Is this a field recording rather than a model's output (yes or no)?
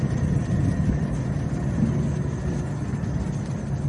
yes